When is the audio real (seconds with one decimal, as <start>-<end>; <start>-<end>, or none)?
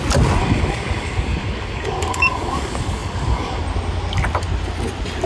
0.0-0.4; 3.6-5.3